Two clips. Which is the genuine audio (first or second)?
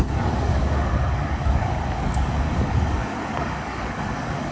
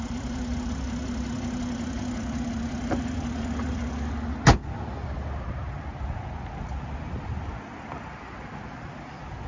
second